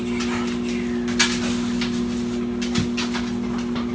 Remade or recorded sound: recorded